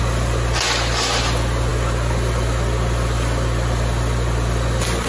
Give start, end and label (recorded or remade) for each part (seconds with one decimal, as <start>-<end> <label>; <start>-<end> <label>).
0.0-5.1 recorded